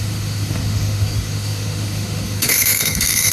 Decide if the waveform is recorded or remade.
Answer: remade